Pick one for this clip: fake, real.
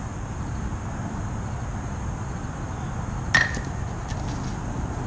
real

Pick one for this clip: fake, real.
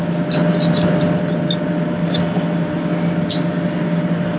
real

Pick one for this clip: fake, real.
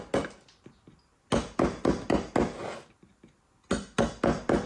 real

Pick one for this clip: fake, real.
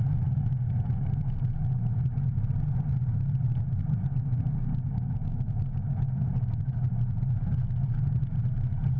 real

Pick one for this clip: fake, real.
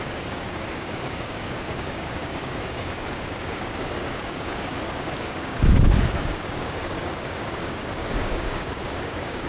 fake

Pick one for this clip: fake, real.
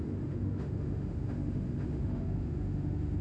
fake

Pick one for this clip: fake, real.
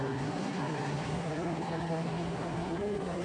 fake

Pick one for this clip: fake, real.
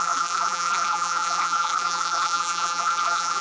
fake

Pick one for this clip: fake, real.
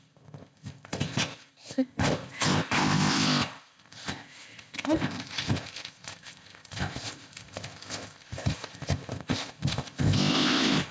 fake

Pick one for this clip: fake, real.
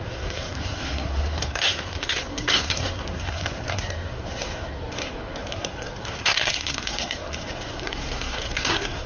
fake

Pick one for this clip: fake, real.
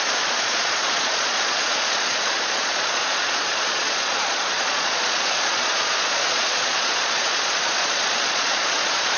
fake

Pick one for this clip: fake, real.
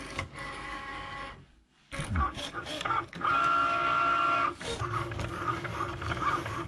fake